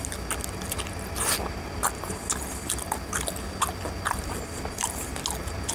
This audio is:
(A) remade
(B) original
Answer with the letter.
B